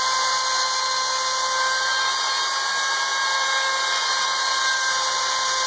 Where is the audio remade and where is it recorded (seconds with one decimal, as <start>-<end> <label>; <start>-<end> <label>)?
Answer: 0.0-5.7 recorded